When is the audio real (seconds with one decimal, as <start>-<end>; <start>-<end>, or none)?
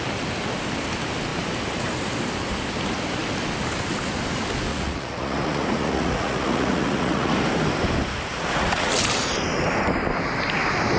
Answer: 0.0-4.7; 7.3-8.3; 8.9-11.0